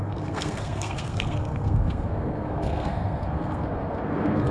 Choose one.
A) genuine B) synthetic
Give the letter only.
B